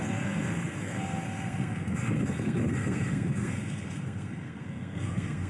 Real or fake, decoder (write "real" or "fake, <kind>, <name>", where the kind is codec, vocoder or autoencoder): fake, codec, SNAC